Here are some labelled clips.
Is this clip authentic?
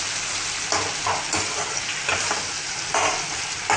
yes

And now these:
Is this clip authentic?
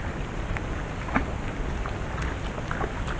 yes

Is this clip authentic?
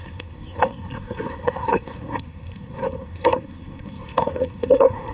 no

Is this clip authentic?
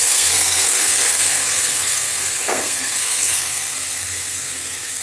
no